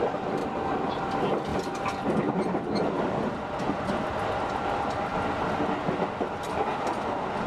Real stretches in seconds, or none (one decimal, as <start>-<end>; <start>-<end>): 0.0-7.5